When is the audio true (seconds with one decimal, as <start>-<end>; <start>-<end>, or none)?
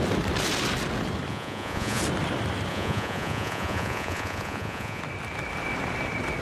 0.0-1.3; 2.0-2.7; 5.0-6.4